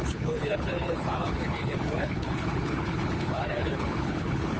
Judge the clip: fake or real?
fake